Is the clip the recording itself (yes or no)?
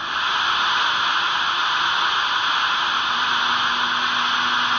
yes